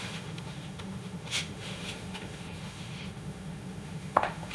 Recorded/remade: remade